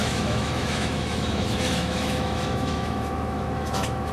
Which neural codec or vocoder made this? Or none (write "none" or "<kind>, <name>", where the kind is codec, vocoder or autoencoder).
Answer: autoencoder, DAC-VAE